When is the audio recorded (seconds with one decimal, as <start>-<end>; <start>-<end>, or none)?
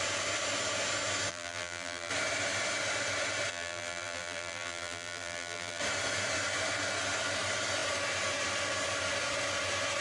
0.0-1.3; 2.1-3.5; 5.8-10.0